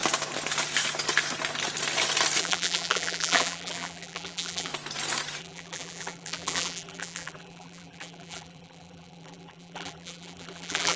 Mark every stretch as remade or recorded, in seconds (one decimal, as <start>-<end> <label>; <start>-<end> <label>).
0.0-2.4 recorded; 2.4-4.7 remade; 4.7-5.4 recorded; 5.4-11.0 remade